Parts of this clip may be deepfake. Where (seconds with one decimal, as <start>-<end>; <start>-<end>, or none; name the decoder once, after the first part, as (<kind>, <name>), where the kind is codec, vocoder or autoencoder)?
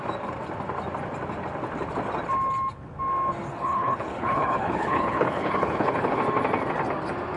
3.5-6.2 (codec, HILCodec)